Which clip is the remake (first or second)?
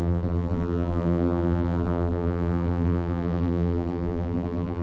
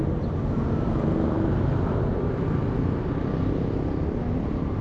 first